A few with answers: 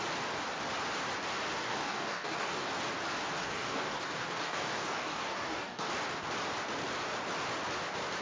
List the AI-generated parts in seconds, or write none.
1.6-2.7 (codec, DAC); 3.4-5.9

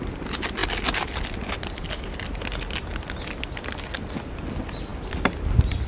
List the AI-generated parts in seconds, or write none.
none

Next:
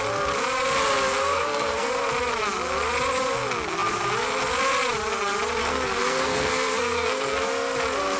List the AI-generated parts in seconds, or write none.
1.2-1.9 (codec, SNAC); 5.6-7.5

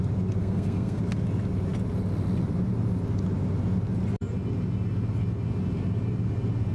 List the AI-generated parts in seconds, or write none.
0.4-1.0 (codec, SNAC)

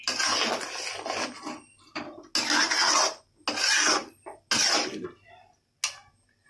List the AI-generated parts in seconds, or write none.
none